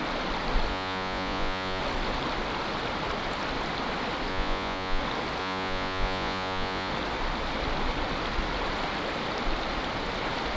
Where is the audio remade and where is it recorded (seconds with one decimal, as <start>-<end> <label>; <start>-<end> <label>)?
0.0-0.7 recorded; 0.7-1.8 remade; 1.8-4.3 recorded; 4.3-5.0 remade; 5.0-5.4 recorded; 5.4-6.9 remade; 6.9-10.6 recorded

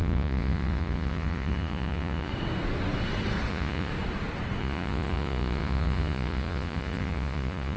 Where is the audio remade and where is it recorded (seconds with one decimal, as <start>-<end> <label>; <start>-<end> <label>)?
0.0-2.3 remade; 2.3-3.5 recorded; 3.5-3.9 remade; 3.9-4.6 recorded; 4.6-7.8 remade

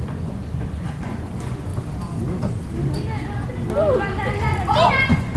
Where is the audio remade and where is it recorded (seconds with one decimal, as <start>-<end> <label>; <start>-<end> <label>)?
0.0-1.7 remade; 1.7-4.9 recorded; 4.9-5.4 remade

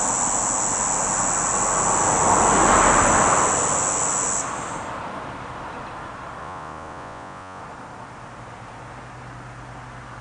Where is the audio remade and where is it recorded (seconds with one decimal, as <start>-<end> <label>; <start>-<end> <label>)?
0.0-6.4 recorded; 6.4-7.6 remade; 7.6-10.2 recorded

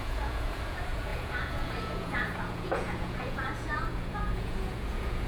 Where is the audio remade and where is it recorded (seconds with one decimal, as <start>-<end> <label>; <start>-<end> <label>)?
0.0-5.3 remade

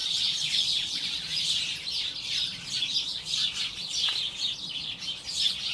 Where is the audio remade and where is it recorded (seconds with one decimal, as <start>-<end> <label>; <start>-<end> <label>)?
0.0-1.6 remade; 1.6-3.1 recorded; 3.1-4.1 remade; 4.1-5.7 recorded

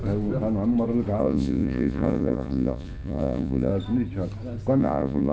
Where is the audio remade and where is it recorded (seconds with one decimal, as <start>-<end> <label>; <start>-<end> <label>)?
0.0-1.2 recorded; 1.2-3.7 remade; 3.7-4.8 recorded; 4.8-5.3 remade

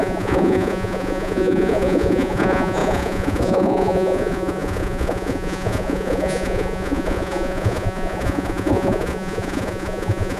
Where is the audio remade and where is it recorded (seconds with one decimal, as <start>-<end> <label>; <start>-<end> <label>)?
0.0-10.4 remade